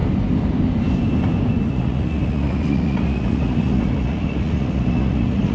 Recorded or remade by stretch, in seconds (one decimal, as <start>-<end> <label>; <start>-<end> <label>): 0.0-1.7 recorded; 1.7-5.5 remade